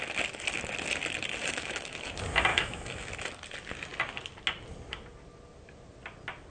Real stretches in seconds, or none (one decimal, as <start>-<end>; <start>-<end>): 0.0-1.4; 2.1-2.5; 3.1-6.5